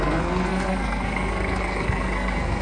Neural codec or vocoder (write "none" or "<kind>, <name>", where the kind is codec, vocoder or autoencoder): codec, SNAC